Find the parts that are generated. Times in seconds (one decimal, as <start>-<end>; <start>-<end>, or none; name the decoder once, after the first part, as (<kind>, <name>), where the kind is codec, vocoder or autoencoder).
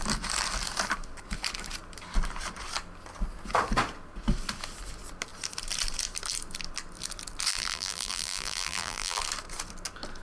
7.5-9.2 (vocoder, BigVGAN v2)